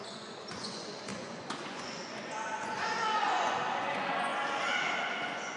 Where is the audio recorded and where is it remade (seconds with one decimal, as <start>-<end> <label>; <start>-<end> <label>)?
0.0-4.3 remade; 4.3-5.0 recorded; 5.0-5.6 remade